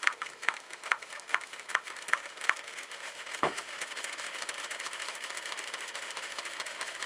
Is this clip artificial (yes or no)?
yes